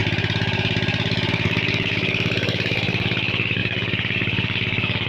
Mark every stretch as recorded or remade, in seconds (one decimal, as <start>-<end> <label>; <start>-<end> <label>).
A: 0.0-1.3 recorded; 1.3-5.1 remade